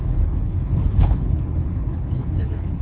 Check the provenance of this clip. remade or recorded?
remade